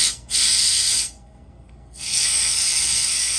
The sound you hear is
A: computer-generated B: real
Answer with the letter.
A